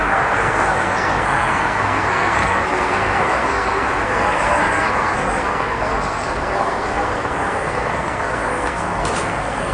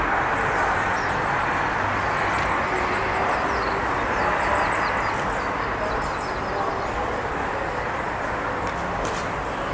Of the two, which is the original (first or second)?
second